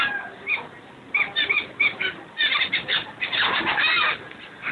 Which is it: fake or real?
real